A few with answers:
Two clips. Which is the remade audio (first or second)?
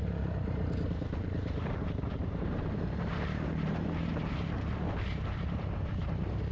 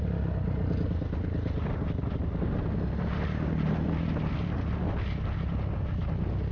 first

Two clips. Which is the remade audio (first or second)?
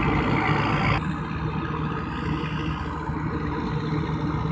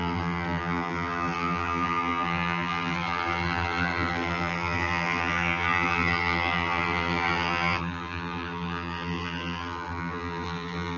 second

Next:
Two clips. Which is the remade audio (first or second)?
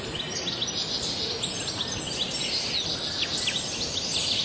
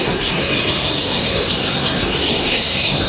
second